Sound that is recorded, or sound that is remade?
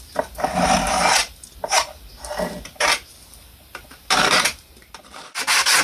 remade